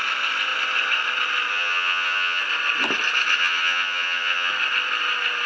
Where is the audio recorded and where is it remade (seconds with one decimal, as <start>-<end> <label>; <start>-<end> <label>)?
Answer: 0.0-1.5 recorded; 1.5-2.4 remade; 2.4-3.4 recorded; 3.4-4.5 remade; 4.5-5.5 recorded